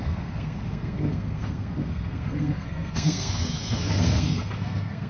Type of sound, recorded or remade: remade